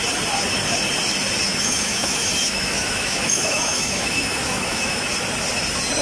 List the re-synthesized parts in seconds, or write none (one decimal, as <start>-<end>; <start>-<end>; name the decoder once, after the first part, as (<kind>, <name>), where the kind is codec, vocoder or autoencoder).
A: 1.5-5.1 (autoencoder, DAC-VAE)